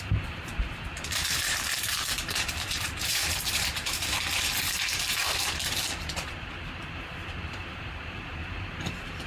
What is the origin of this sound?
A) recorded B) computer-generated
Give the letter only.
B